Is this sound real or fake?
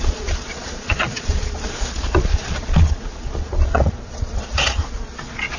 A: fake